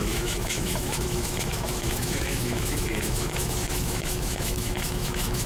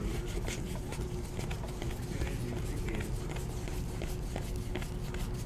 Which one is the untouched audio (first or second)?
second